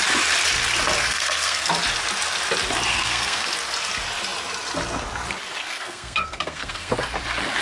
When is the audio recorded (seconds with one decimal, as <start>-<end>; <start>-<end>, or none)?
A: 0.0-1.0; 1.7-2.9; 3.5-5.6; 6.9-7.6